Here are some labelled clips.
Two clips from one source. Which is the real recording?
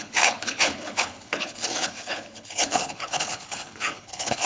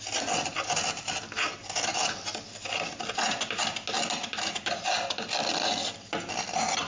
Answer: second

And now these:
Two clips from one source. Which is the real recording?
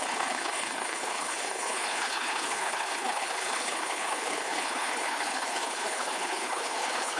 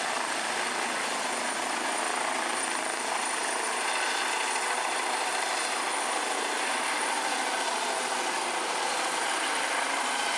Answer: second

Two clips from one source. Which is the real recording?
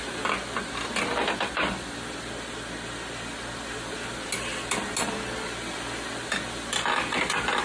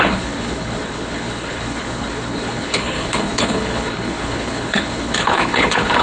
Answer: first